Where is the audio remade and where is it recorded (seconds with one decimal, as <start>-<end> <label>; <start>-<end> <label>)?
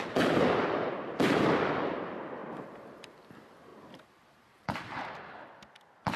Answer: 0.0-2.4 recorded; 2.4-3.1 remade; 3.1-3.7 recorded; 3.7-5.3 remade; 5.3-6.2 recorded